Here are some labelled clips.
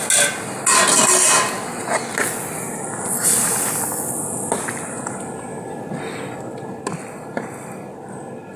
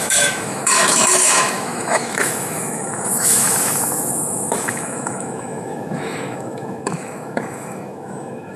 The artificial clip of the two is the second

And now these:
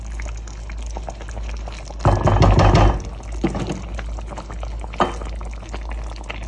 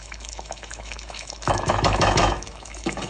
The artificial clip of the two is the second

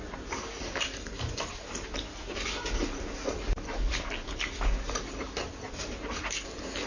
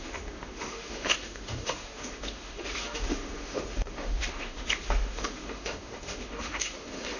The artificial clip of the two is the second